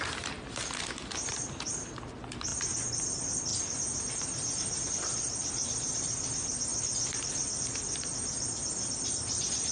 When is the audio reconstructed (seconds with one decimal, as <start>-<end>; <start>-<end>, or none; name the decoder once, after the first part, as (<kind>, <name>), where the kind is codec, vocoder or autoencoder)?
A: 3.5-4.9 (vocoder, BigVGAN v2); 5.4-6.1